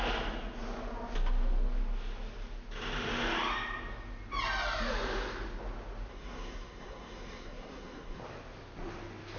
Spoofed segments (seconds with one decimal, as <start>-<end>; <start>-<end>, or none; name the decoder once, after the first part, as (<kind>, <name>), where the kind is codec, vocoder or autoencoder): 6.1-8.2 (codec, SNAC)